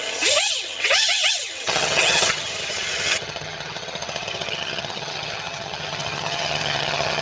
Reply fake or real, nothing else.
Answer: fake